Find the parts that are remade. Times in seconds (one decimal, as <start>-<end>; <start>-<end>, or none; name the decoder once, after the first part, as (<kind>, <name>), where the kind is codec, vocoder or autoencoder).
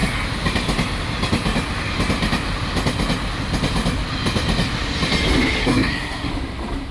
5.6-6.3 (codec, SNAC)